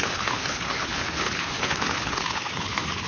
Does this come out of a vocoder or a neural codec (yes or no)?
yes